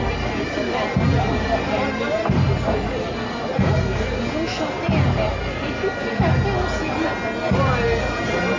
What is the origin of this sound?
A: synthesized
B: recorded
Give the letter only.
B